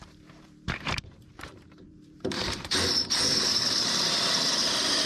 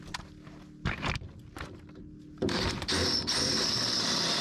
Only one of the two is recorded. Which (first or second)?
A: second